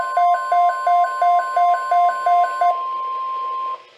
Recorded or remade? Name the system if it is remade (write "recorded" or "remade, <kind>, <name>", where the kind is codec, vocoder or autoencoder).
recorded